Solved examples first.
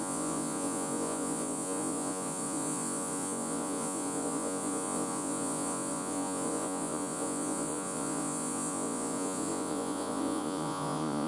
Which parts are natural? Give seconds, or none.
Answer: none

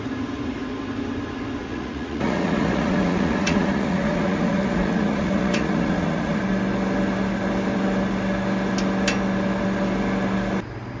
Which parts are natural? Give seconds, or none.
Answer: 0.0-1.6; 6.4-11.0

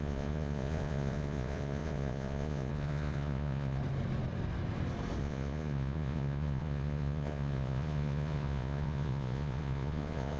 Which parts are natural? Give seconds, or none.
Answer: 3.8-5.2

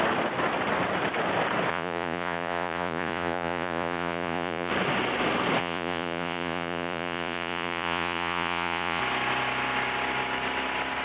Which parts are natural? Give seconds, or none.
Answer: 0.0-1.7; 4.7-5.6; 9.0-11.0

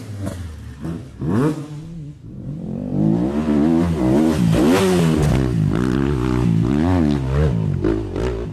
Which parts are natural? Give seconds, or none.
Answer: 0.0-8.5

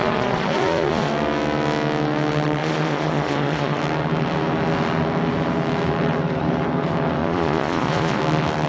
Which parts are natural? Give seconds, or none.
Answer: 1.1-2.6; 3.8-7.2; 8.2-8.7

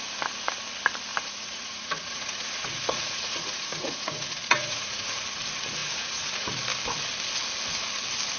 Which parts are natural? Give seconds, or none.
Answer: 0.0-1.1; 5.2-5.8; 6.5-8.4